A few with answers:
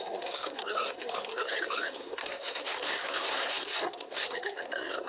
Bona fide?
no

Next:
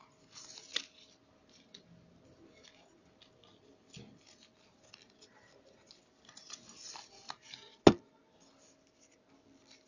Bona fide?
yes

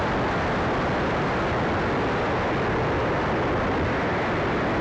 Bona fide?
yes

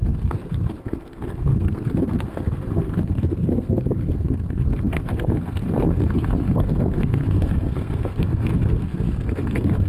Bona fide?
no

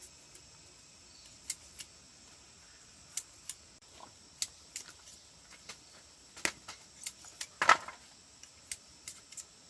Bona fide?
yes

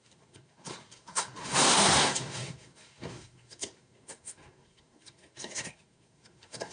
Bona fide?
no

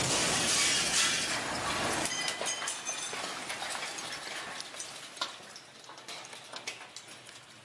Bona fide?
yes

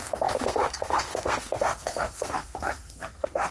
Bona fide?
no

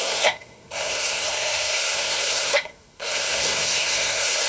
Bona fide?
no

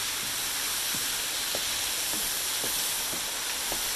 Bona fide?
yes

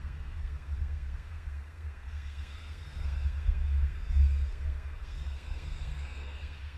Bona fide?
no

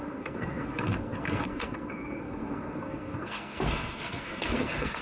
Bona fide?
no